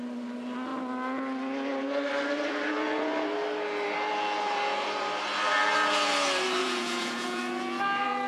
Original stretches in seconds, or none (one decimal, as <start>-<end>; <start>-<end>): 0.0-6.6; 7.4-8.3